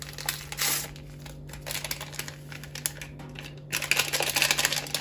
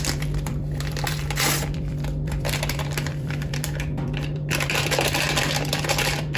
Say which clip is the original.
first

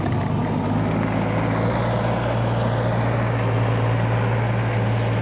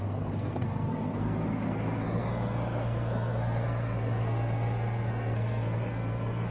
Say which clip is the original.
first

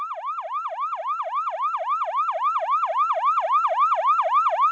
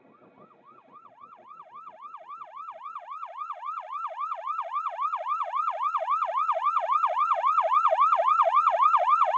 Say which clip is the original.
first